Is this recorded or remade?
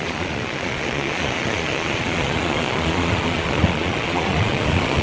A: remade